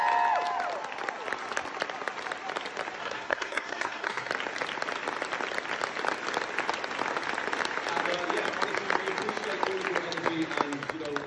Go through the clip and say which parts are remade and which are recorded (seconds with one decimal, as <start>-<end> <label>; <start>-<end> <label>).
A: 0.0-3.0 recorded; 3.0-4.3 remade; 4.3-11.3 recorded